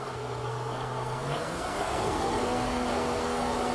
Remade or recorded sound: remade